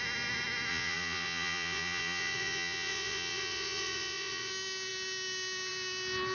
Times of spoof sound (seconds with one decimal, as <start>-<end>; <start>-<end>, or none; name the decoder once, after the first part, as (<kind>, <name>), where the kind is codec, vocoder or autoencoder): 0.7-4.5 (vocoder, Vocos)